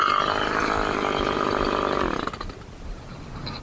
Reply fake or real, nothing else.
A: real